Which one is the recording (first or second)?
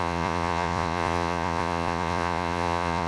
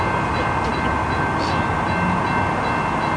second